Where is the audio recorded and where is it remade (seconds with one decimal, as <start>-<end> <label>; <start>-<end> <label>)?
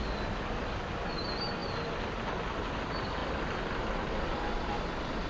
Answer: 0.0-5.3 recorded